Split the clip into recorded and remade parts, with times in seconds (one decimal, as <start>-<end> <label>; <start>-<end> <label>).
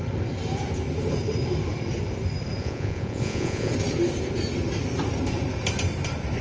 0.0-2.6 recorded; 2.6-3.7 remade; 3.7-6.4 recorded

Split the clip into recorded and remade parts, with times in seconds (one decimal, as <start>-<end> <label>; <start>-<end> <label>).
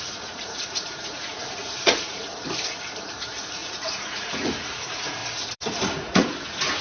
0.0-2.3 remade; 2.3-3.0 recorded; 3.0-5.2 remade; 5.2-5.9 recorded; 5.9-6.8 remade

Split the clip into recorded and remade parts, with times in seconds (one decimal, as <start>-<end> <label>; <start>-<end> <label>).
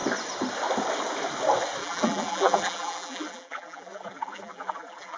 0.0-1.8 recorded; 1.8-5.2 remade